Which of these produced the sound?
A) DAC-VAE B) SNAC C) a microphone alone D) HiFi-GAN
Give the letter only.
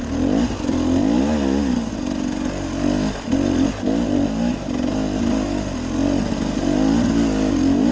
C